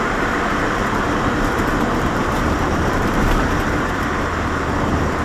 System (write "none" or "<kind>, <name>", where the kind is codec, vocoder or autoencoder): vocoder, BigVGAN v2